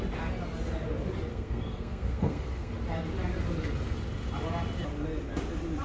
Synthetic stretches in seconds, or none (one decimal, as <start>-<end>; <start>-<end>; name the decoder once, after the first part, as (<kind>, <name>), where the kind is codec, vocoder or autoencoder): 1.3-2.7 (codec, SNAC)